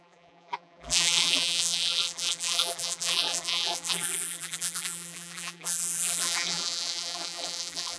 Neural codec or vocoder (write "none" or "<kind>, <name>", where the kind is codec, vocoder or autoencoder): vocoder, BigVGAN v2